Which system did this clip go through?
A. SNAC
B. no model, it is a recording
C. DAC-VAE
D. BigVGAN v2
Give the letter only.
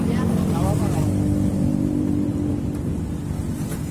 D